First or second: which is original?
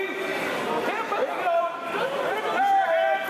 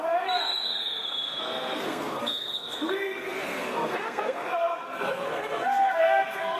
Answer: first